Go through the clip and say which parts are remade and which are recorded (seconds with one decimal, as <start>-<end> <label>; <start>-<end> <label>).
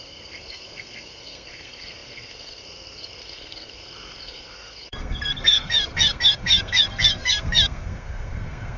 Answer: 0.0-8.8 remade